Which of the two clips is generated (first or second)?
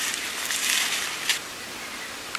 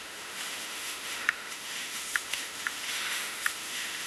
second